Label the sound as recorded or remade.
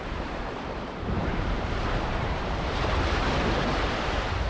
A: remade